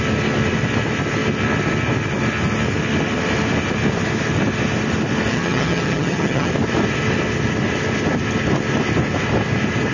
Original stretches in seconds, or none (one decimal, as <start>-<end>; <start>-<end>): 0.0-5.3; 6.5-9.9